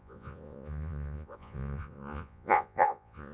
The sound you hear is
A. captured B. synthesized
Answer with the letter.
B